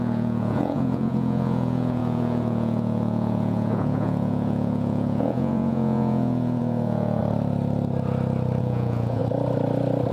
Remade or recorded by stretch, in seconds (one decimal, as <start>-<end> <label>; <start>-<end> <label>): 0.0-7.2 remade; 7.2-8.6 recorded; 8.6-9.2 remade; 9.2-10.1 recorded